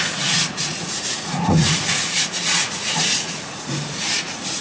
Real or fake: fake